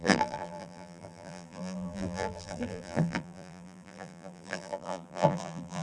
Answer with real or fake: fake